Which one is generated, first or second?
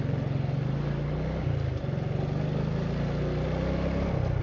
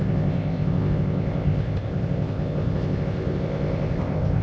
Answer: second